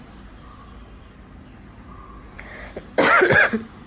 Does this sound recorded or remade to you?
recorded